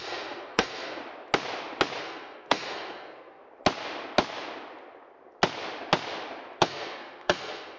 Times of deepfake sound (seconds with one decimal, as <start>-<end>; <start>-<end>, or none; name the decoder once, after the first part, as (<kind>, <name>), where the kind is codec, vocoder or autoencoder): 0.0-1.0 (codec, SNAC); 2.0-3.4; 6.6-7.8